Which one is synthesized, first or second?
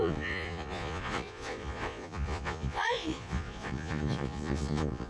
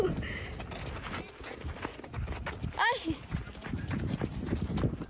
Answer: first